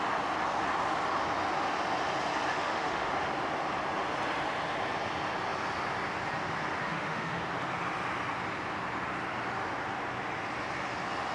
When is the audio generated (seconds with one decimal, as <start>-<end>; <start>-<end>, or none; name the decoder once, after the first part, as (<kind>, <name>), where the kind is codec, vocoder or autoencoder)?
2.5-3.1 (autoencoder, DAC-VAE); 6.8-7.4